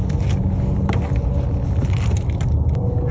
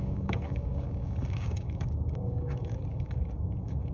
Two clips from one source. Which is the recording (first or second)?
first